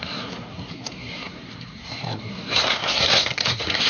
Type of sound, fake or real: fake